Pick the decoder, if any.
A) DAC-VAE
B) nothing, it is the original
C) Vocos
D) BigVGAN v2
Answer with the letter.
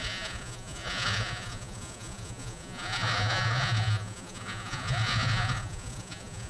C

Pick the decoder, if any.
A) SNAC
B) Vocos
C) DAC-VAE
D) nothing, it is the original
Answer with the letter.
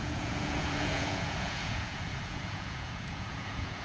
B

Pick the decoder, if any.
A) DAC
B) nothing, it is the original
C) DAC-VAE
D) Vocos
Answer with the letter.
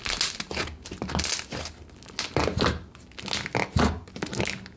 B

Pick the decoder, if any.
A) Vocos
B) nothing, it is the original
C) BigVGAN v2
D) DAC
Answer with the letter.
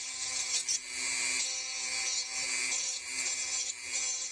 B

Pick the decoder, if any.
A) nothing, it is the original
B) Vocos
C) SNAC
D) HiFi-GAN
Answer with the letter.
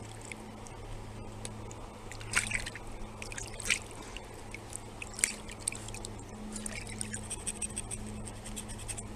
A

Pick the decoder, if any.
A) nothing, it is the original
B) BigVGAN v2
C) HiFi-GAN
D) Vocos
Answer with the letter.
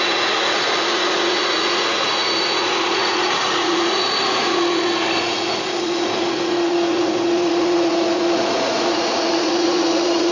D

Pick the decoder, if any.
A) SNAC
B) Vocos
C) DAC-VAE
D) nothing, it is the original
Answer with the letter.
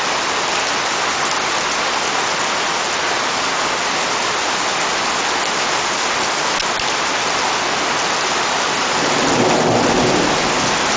D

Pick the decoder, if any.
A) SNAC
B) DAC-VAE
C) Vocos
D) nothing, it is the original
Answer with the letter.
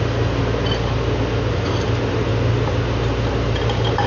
D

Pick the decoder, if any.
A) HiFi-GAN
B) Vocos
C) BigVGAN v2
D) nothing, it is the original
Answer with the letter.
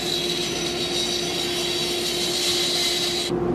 D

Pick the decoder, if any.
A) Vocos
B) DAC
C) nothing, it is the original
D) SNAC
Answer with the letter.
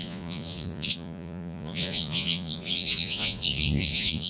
A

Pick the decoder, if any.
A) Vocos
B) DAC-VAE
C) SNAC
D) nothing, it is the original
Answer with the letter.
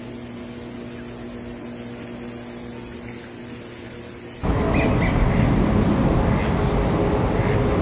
D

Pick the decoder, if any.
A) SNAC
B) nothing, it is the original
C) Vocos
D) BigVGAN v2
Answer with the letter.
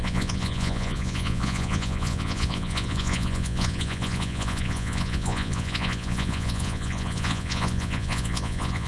C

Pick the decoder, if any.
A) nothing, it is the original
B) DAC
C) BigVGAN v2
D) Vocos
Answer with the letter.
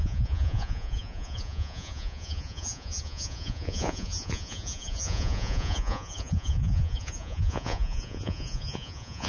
D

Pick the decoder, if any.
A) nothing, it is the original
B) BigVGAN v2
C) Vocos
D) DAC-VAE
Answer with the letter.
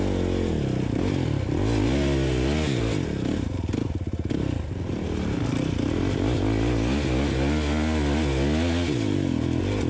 A